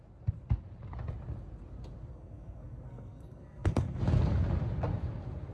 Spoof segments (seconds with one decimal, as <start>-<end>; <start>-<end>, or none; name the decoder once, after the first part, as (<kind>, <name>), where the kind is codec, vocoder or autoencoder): 2.1-4.0 (codec, SNAC)

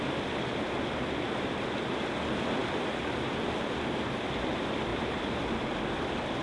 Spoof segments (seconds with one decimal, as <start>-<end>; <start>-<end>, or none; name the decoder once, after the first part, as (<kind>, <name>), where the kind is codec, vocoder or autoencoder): 4.9-5.4 (vocoder, BigVGAN v2)

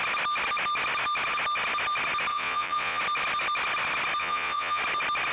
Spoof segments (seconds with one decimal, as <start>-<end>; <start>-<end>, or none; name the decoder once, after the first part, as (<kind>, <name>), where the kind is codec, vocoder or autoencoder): 2.3-3.0 (vocoder, Vocos); 4.2-4.8

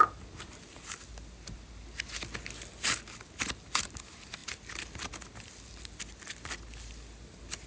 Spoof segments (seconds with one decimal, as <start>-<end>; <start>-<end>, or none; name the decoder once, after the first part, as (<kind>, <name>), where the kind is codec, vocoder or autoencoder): none